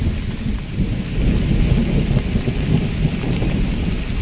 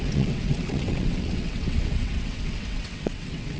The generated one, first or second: second